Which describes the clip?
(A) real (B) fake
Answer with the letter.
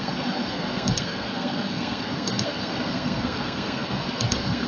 B